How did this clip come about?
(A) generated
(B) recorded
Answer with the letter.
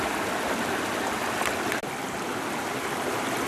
B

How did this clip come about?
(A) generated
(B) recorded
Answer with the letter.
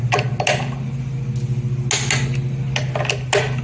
B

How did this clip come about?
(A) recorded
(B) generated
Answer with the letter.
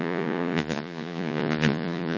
B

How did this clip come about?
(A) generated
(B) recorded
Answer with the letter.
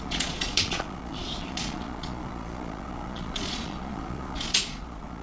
A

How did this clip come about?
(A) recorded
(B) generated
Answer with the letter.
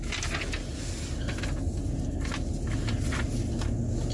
A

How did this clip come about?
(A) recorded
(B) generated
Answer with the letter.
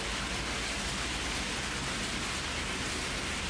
A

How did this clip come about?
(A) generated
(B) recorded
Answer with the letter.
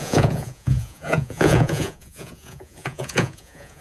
A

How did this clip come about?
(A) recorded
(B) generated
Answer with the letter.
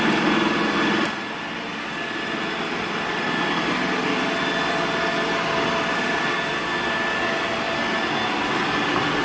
A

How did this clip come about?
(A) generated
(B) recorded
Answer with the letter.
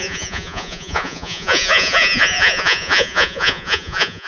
A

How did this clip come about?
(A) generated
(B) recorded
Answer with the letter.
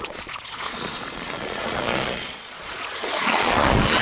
A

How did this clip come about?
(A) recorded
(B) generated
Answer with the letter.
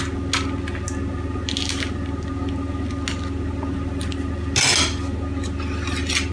A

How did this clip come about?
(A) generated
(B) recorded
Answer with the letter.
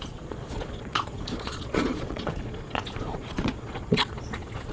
A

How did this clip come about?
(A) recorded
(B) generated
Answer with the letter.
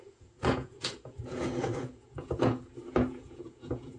B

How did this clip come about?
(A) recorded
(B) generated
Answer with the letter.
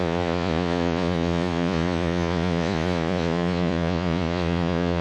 B